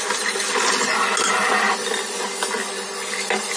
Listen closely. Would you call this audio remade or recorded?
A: recorded